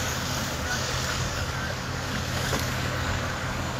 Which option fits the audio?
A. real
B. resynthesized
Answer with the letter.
B